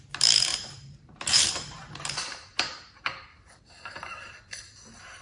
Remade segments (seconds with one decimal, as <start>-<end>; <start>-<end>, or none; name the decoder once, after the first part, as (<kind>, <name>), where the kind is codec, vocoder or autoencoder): 0.5-3.6 (vocoder, BigVGAN v2)